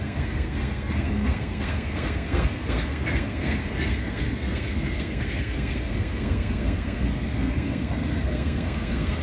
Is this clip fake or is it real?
fake